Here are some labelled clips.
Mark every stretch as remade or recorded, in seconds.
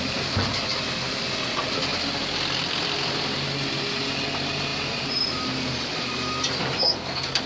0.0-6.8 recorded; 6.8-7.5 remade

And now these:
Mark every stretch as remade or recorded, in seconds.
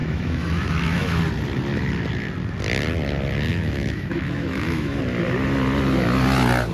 0.0-1.2 remade; 1.2-3.5 recorded; 3.5-5.0 remade; 5.0-6.7 recorded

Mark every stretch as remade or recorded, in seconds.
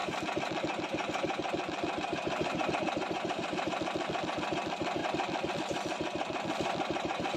0.0-7.4 remade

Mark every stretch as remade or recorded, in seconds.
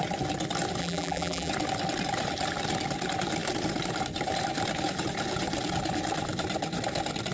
0.0-0.8 recorded; 0.8-1.5 remade; 1.5-7.3 recorded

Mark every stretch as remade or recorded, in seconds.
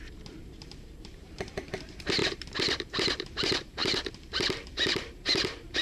0.0-5.8 remade